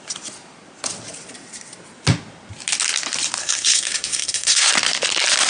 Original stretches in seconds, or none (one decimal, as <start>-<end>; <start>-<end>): 0.0-3.4; 4.7-5.5